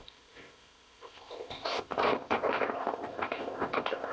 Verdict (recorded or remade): remade